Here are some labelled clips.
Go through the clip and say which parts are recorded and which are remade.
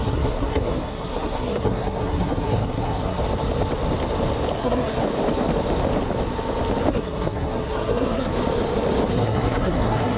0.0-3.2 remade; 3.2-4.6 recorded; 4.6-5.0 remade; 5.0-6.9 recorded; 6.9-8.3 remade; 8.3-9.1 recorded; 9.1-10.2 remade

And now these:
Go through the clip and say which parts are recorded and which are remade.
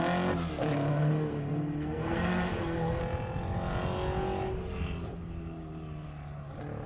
0.0-0.9 recorded; 0.9-3.0 remade; 3.0-6.9 recorded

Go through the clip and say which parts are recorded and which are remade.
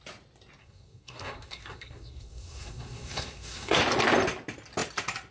0.0-0.6 recorded; 0.6-3.8 remade; 3.8-5.3 recorded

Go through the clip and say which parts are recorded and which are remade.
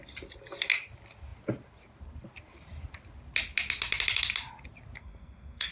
0.0-5.0 recorded; 5.0-5.7 remade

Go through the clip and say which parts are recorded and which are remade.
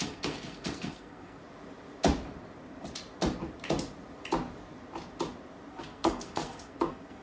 0.0-1.4 remade; 1.4-5.7 recorded; 5.7-7.2 remade